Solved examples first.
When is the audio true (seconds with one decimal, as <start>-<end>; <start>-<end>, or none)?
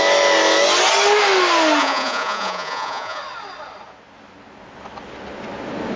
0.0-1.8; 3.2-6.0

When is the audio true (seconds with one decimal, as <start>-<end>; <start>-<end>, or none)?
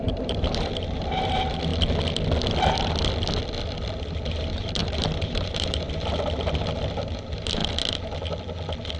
1.7-4.0; 7.6-9.0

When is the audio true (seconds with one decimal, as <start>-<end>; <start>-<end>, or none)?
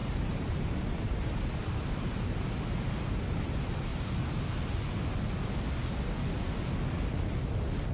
2.9-3.9; 4.4-7.9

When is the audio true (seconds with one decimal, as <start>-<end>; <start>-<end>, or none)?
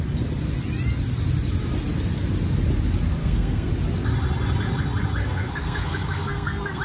0.0-3.2; 3.7-5.2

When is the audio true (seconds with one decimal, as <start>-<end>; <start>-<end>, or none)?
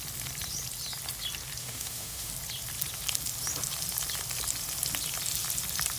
0.0-1.6; 2.3-6.0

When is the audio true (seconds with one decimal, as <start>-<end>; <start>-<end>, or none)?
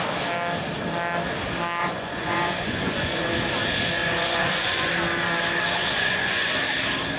0.0-1.8; 3.3-4.0; 4.9-5.8; 6.5-7.2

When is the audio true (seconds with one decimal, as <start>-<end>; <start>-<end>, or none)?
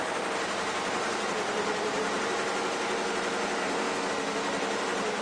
0.0-3.6; 4.1-5.2